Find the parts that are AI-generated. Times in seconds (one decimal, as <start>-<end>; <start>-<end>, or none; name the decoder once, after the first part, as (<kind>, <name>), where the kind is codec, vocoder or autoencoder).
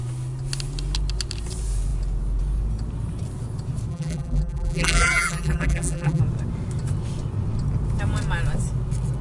3.9-6.2 (vocoder, BigVGAN v2)